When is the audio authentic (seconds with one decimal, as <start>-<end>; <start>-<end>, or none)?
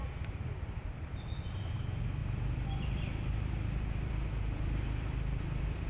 0.0-2.2